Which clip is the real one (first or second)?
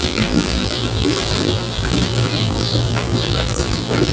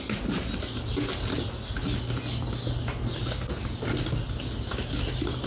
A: second